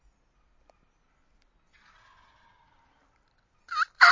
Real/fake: real